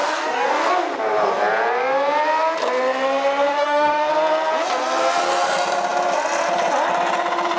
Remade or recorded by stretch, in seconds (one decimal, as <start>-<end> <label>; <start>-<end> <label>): 0.0-0.7 remade; 0.7-3.5 recorded; 3.5-4.1 remade; 4.1-7.6 recorded